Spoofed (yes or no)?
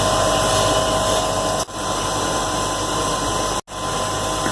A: no